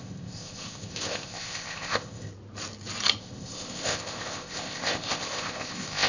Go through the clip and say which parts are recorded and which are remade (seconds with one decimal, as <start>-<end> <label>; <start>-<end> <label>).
0.0-2.3 remade; 2.3-3.2 recorded; 3.2-6.1 remade